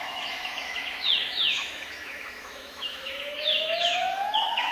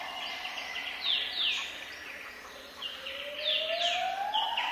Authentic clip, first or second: second